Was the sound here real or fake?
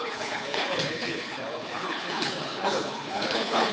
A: fake